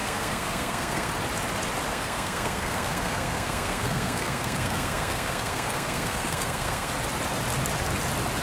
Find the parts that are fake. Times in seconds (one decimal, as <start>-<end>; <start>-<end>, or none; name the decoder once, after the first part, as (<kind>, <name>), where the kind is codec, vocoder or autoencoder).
0.0-1.1 (codec, SNAC); 1.9-6.9